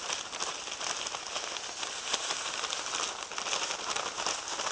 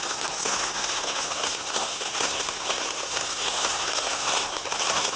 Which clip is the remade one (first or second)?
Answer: second